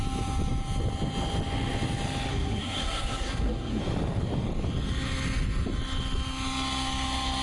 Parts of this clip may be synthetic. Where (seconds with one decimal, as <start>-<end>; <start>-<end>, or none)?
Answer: 2.3-3.8